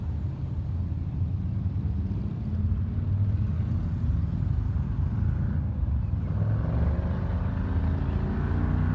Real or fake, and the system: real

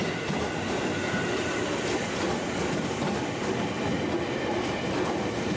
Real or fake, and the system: real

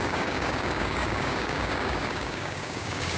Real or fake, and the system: fake, codec, DAC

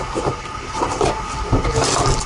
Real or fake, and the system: real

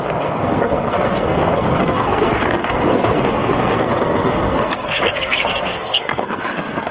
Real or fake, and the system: fake, codec, SNAC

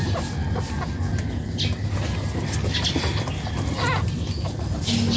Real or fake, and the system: real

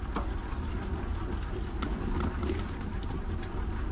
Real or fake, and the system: real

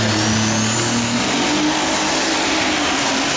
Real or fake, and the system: real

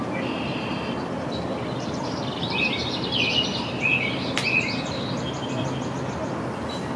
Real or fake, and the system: real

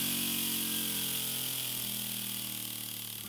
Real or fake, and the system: real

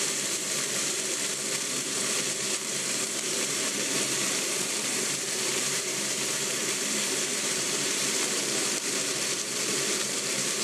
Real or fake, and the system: fake, vocoder, BigVGAN v2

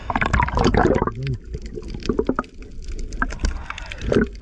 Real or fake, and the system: real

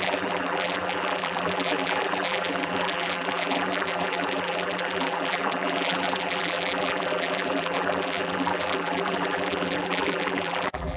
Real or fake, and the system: fake, vocoder, BigVGAN v2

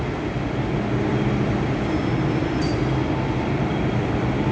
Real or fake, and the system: real